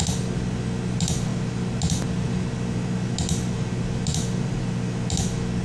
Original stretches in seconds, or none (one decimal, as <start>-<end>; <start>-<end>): 0.0-5.6

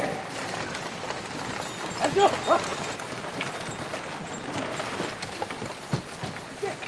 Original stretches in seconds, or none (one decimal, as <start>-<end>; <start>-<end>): 0.0-6.9

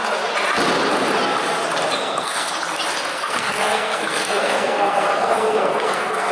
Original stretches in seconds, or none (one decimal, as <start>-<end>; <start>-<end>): 0.0-1.9; 2.5-3.1

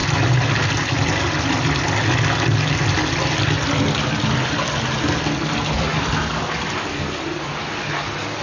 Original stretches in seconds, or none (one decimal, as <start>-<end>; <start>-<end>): 0.0-8.4

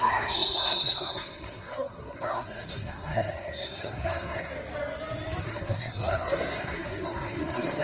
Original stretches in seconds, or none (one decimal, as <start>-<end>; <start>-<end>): 4.5-5.4

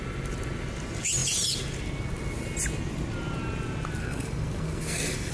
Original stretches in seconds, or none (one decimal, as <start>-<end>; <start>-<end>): 0.0-4.0

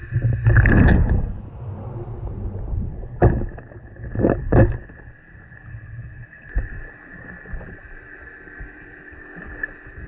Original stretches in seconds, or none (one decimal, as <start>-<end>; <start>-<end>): 0.0-10.1

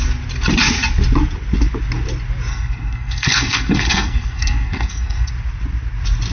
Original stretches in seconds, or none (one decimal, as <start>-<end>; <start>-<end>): 0.0-2.5; 5.3-6.3